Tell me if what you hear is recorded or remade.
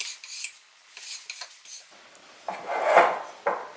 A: recorded